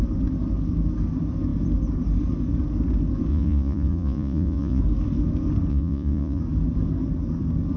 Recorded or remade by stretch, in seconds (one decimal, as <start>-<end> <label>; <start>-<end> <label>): 0.0-3.3 recorded; 3.3-4.8 remade; 4.8-5.7 recorded; 5.7-6.4 remade; 6.4-7.8 recorded